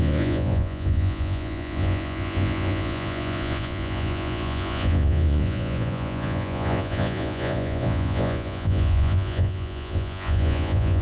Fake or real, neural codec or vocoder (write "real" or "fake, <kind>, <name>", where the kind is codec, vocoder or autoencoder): fake, vocoder, Vocos